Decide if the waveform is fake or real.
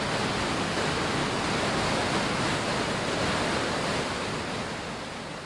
real